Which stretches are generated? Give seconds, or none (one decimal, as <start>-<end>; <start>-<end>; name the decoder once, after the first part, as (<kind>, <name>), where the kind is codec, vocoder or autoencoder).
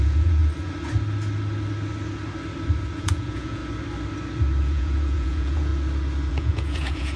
0.0-0.4 (vocoder, Vocos); 3.0-3.6; 4.6-5.7; 6.3-7.2